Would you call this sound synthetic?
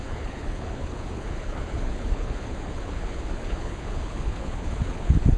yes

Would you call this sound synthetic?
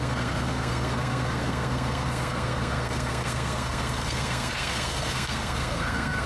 yes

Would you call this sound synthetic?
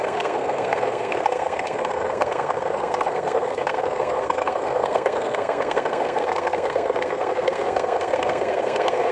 yes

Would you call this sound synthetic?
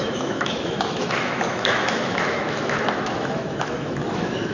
yes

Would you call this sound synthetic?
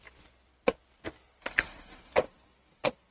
no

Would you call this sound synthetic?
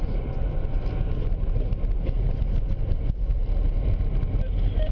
no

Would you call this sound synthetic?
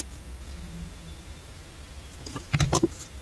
no